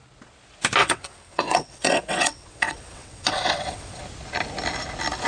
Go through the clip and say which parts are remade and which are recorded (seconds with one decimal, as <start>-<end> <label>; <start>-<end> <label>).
0.0-0.8 recorded; 0.8-4.0 remade; 4.0-5.3 recorded